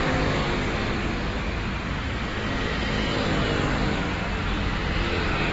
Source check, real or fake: real